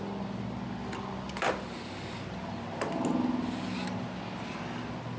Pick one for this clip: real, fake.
real